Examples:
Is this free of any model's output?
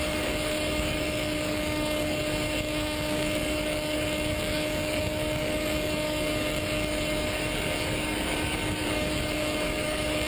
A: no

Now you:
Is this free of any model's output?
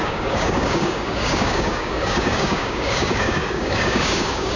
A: no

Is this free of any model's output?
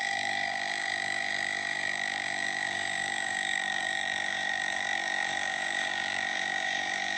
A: no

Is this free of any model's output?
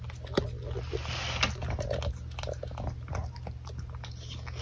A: yes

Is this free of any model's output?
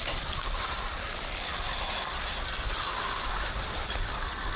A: yes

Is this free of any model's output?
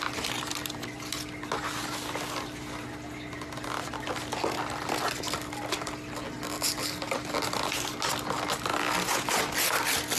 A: yes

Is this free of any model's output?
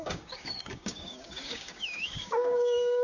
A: no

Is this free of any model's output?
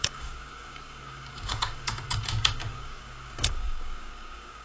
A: no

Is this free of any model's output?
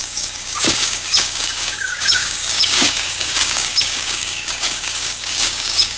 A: no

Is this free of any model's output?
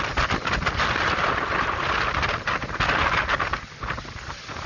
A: yes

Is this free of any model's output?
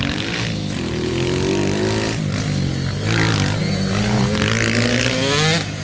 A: yes